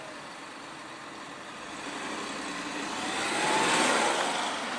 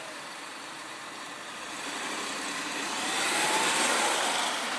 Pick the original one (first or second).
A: first